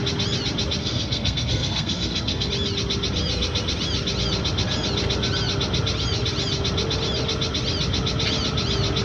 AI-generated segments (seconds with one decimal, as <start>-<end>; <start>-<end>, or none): 0.8-2.5